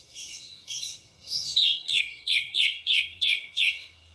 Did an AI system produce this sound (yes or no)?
yes